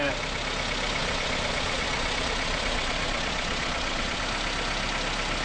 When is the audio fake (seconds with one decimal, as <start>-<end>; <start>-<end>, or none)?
1.0-4.2